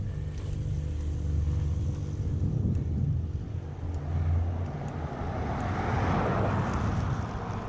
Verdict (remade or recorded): recorded